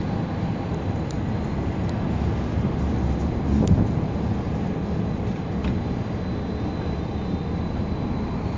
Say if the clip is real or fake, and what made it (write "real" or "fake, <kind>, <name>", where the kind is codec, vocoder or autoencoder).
real